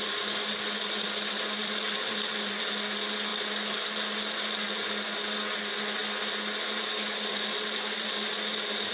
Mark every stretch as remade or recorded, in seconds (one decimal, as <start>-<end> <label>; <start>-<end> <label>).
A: 0.0-1.6 recorded; 1.6-2.6 remade; 2.6-8.9 recorded